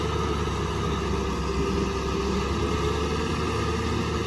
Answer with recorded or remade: recorded